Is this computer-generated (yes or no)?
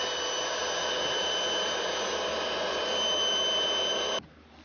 no